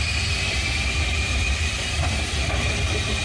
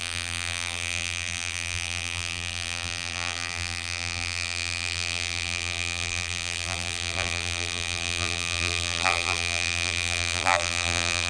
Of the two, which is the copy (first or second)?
second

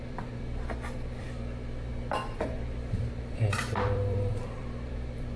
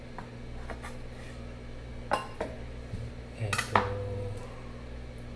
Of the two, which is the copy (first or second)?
first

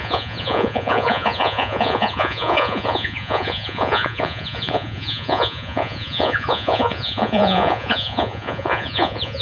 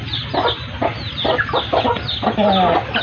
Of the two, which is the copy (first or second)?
first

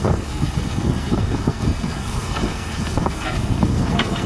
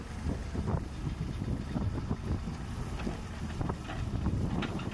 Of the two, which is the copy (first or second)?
first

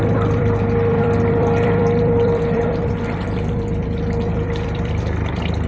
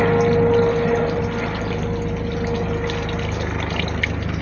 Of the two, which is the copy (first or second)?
first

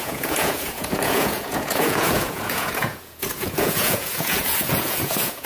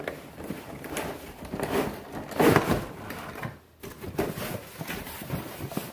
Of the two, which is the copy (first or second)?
first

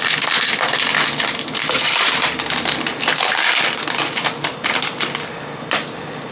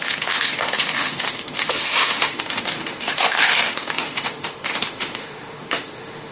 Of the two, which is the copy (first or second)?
second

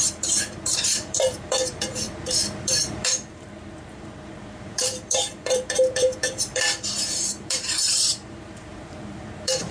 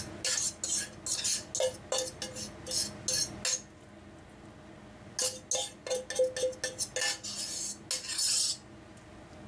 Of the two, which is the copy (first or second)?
first